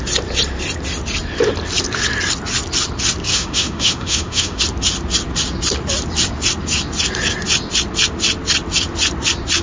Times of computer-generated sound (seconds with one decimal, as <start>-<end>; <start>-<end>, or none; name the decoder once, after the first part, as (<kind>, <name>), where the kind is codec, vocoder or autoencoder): 3.3-4.6 (autoencoder, DAC-VAE)